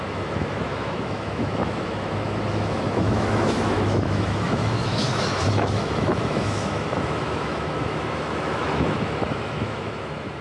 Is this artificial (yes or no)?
yes